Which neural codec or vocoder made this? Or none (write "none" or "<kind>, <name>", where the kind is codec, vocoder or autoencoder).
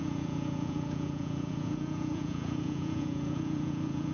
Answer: vocoder, Vocos